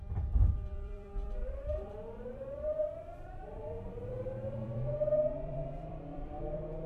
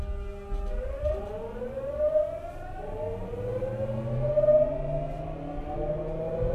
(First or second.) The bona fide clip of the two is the second